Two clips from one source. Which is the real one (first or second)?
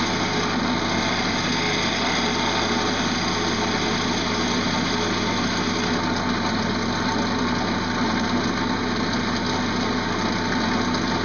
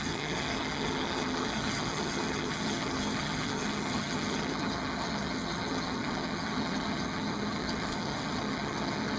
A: first